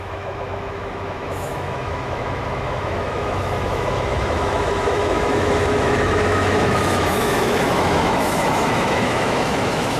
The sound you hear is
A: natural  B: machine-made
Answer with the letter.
B